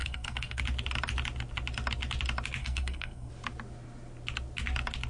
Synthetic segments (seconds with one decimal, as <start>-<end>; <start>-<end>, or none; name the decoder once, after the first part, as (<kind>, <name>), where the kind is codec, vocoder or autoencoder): 0.0-0.6 (codec, SNAC); 2.6-3.3